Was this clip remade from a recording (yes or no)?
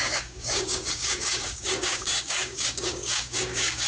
yes